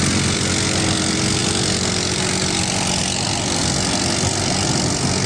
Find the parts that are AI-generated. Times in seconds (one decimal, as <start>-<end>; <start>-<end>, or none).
1.4-3.0